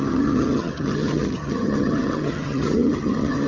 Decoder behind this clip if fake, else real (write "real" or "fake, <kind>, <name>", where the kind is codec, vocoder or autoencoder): fake, vocoder, HiFi-GAN